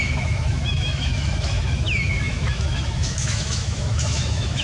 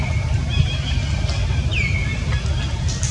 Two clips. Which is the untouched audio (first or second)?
second